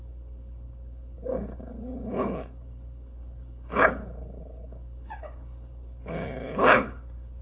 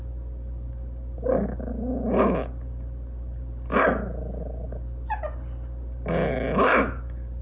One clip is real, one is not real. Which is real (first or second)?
second